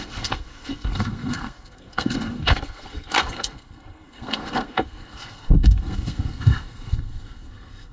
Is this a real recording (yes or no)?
no